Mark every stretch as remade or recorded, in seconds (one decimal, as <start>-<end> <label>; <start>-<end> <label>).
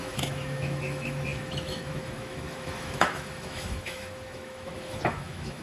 0.0-5.6 remade